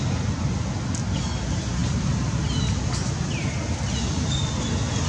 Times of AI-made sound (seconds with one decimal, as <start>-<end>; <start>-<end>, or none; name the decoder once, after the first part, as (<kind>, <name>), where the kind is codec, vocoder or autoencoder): none